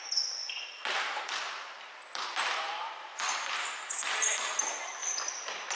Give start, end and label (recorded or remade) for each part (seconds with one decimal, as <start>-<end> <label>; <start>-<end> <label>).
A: 0.0-0.4 recorded; 0.4-3.9 remade; 3.9-5.8 recorded